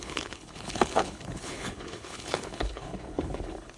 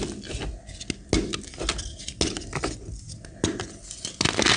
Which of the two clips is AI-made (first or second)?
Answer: first